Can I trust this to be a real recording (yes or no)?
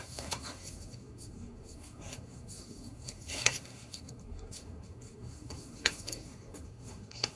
no